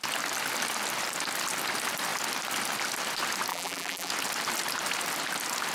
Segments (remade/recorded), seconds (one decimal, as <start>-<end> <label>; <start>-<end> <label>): 0.0-3.5 recorded; 3.5-4.1 remade; 4.1-5.7 recorded